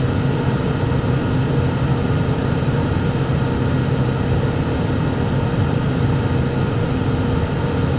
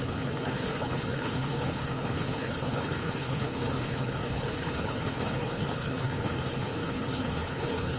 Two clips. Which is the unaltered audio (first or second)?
first